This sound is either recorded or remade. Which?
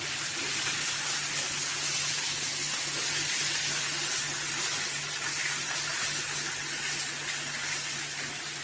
recorded